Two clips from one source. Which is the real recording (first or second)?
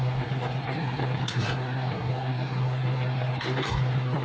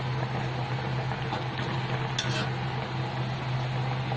second